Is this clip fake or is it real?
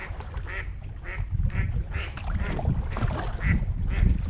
real